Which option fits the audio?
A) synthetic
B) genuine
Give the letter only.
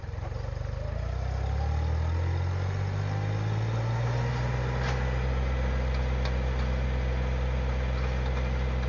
B